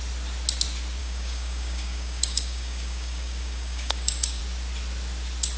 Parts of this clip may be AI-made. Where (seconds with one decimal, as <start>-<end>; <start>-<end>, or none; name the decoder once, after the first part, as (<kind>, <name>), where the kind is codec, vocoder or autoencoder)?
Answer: 1.0-4.4 (codec, DAC)